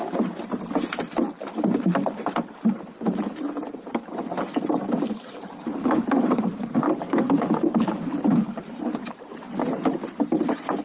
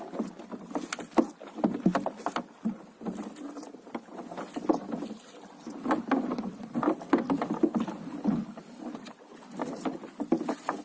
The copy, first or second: first